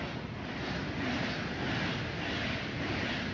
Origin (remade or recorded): recorded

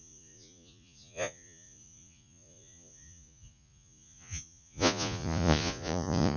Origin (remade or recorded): remade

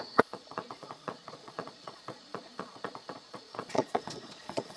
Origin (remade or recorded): remade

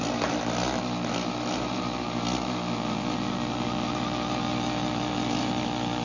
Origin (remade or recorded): recorded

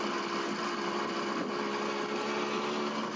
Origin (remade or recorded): recorded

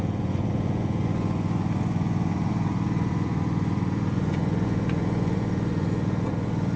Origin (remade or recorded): remade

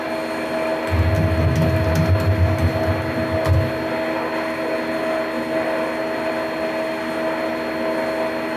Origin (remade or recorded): recorded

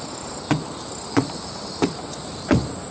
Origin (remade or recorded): recorded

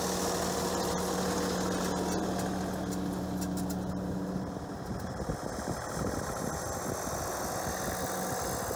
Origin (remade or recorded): recorded